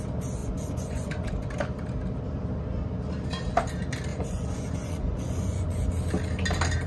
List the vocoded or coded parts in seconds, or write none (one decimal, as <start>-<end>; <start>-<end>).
0.4-1.5; 4.1-5.9